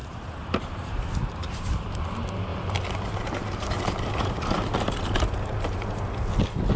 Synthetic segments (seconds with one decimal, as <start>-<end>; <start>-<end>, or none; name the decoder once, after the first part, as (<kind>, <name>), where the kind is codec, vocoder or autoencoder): 0.0-2.0 (vocoder, BigVGAN v2); 2.5-6.0